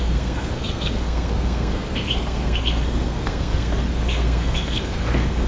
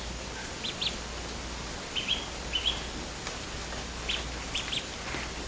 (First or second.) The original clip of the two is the second